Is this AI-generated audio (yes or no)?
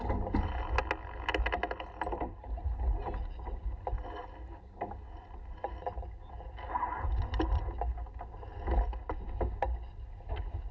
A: no